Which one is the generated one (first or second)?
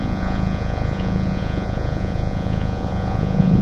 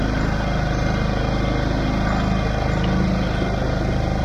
first